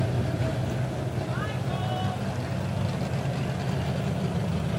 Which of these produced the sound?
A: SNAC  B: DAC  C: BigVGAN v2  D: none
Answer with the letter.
D